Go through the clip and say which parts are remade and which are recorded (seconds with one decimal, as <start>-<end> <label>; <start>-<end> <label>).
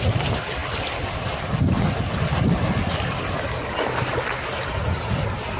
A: 0.0-5.6 recorded